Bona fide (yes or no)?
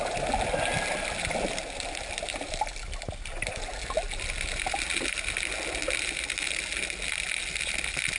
yes